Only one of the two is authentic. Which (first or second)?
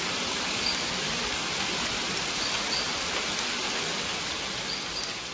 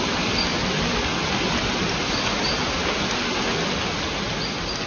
second